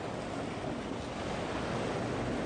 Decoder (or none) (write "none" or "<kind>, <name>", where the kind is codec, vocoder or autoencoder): none